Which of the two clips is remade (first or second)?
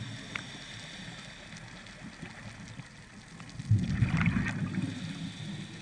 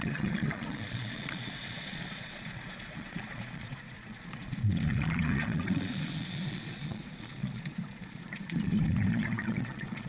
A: second